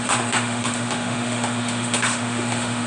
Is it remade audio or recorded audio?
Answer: remade